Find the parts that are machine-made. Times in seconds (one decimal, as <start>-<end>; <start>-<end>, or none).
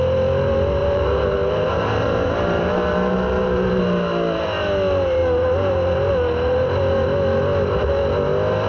0.8-3.8